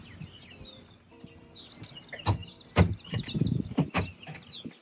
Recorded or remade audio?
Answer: recorded